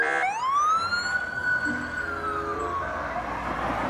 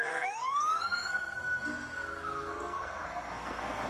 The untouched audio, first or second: first